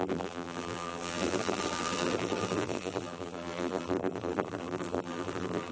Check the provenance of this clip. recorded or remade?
remade